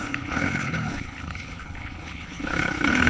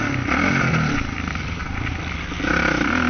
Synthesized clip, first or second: first